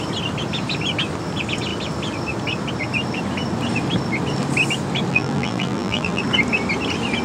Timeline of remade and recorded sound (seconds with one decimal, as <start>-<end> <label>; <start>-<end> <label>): 0.0-5.1 recorded; 5.1-6.2 remade; 6.2-7.2 recorded